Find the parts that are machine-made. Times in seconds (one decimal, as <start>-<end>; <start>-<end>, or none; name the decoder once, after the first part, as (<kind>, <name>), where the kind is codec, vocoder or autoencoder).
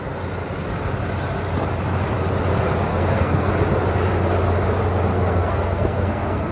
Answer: 2.9-3.5 (codec, SNAC); 5.1-6.5